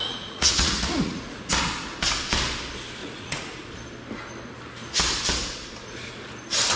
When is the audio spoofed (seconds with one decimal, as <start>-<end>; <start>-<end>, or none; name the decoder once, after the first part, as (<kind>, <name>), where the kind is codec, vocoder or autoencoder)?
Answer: 0.0-1.5 (vocoder, Vocos); 3.0-3.7